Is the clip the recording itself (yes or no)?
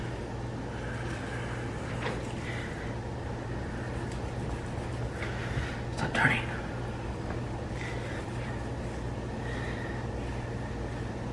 yes